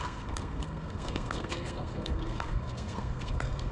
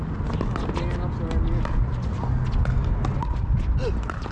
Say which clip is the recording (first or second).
second